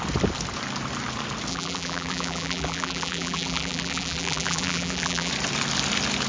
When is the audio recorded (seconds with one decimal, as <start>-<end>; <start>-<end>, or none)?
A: 0.0-1.5; 5.3-6.3